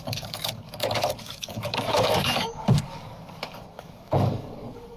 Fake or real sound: fake